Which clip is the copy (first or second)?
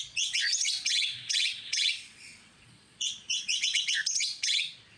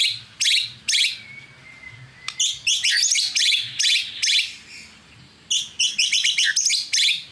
first